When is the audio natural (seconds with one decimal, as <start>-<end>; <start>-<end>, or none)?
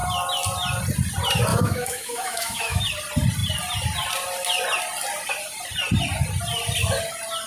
0.0-1.5; 2.8-7.5